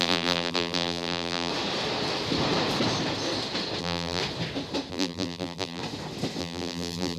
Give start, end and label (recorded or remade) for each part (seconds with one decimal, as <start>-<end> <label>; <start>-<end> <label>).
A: 0.0-1.5 remade; 1.5-3.8 recorded; 3.8-4.2 remade; 4.2-4.9 recorded; 4.9-5.8 remade; 5.8-6.4 recorded; 6.4-7.2 remade